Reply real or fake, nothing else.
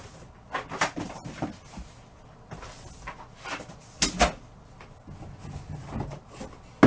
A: real